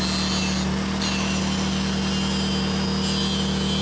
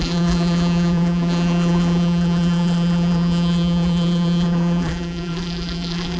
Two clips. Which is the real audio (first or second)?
first